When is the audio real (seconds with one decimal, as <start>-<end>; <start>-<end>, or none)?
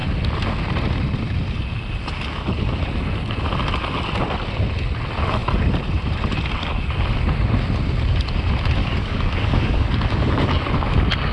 0.0-8.8; 10.7-11.3